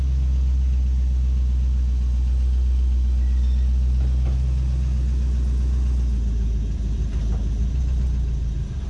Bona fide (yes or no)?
yes